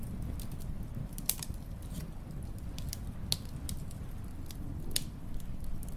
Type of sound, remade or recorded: recorded